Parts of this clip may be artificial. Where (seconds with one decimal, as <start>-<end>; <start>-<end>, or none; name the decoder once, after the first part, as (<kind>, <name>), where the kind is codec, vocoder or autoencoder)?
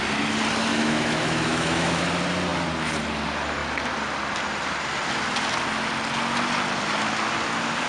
0.7-2.0 (autoencoder, DAC-VAE)